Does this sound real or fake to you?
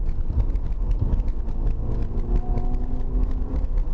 real